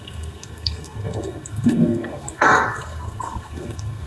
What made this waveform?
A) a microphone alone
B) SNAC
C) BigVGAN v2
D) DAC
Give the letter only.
B